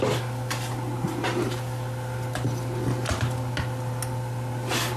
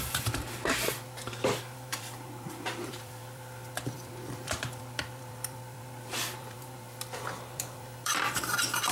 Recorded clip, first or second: first